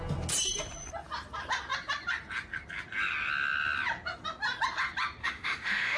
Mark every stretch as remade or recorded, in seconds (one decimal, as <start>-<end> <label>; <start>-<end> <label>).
0.0-5.2 recorded; 5.2-6.0 remade